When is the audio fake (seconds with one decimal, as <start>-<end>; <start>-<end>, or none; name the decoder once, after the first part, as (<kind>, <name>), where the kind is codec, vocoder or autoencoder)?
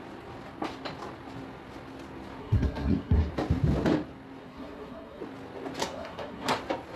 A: 2.4-3.3 (codec, SNAC); 4.4-5.2; 5.8-6.6